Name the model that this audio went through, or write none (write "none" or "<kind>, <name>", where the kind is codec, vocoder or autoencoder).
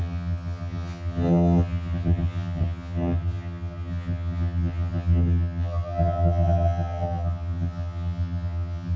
vocoder, HiFi-GAN